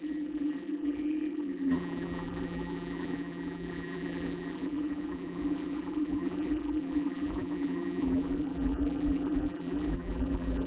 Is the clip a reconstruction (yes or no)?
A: yes